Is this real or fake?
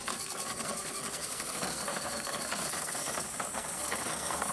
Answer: fake